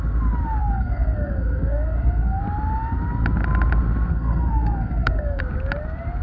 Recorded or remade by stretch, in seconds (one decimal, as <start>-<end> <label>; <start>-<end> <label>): 0.0-0.6 recorded; 0.6-2.4 remade; 2.4-4.1 recorded; 4.1-5.4 remade; 5.4-6.2 recorded